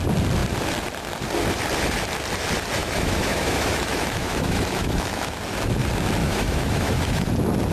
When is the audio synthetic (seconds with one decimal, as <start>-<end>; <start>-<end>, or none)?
2.8-5.3; 6.2-7.3